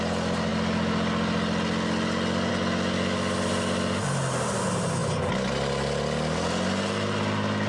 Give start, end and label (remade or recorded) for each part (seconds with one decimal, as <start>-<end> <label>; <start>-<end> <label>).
0.0-7.7 recorded